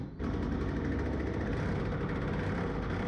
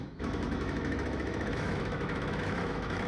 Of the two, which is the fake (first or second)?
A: second